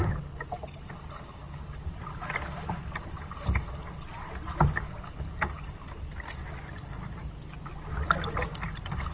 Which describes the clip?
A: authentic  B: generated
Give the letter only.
A